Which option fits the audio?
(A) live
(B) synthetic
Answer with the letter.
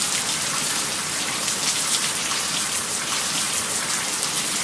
A